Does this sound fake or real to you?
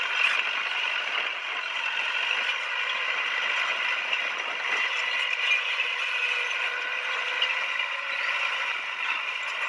real